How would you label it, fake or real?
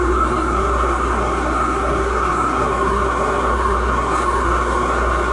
fake